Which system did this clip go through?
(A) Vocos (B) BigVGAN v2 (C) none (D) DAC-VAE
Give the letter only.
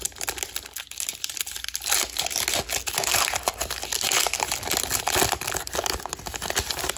C